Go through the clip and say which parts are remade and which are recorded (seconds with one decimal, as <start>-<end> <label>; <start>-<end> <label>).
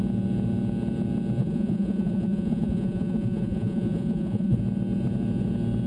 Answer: 0.0-1.4 recorded; 1.4-4.6 remade; 4.6-5.9 recorded